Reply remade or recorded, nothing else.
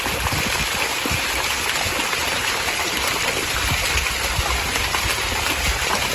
remade